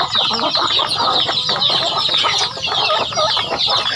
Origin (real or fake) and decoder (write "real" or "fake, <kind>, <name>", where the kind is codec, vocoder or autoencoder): real